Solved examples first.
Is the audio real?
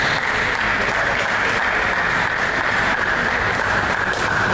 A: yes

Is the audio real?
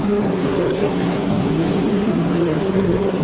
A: no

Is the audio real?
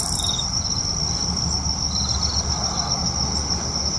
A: yes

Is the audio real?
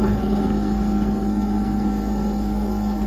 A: no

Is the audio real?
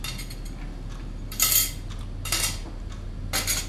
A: yes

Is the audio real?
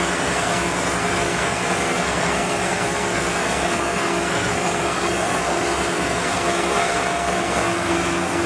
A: no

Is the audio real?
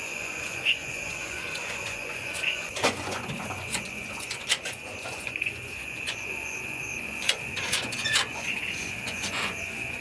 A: no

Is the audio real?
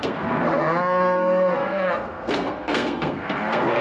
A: no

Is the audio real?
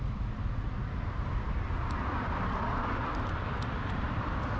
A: yes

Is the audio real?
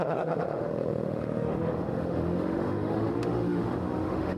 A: no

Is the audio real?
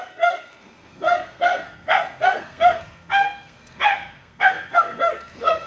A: no